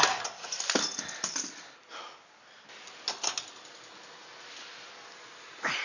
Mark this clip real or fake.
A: real